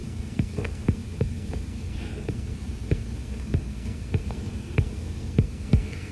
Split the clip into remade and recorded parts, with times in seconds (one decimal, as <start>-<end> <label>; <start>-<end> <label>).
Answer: 0.0-6.1 remade

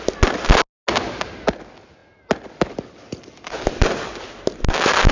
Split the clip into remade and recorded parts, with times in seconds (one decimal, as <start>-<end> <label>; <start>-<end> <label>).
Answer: 0.0-5.1 recorded

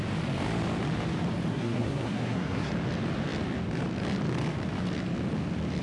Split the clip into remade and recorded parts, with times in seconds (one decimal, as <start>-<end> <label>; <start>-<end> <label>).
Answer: 0.0-1.5 recorded; 1.5-2.7 remade; 2.7-5.8 recorded